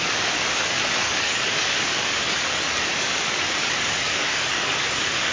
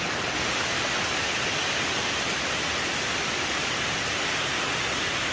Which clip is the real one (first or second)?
second